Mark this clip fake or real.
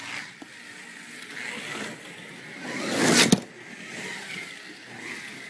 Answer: real